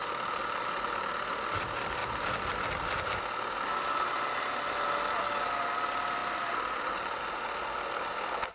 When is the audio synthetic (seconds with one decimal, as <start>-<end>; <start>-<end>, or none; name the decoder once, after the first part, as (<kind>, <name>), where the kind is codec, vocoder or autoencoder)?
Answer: 6.2-7.6 (vocoder, BigVGAN v2)